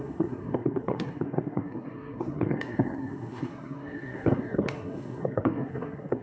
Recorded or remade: remade